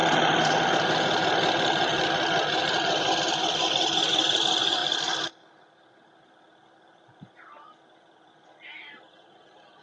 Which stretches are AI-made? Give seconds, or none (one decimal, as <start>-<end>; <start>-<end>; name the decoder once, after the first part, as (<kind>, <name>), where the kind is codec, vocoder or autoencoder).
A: 0.0-1.9 (vocoder, BigVGAN v2); 2.6-9.8